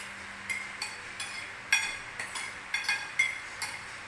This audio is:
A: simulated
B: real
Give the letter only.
B